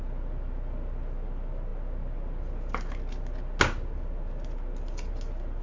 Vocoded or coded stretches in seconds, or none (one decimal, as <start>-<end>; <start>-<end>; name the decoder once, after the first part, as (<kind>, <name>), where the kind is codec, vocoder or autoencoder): none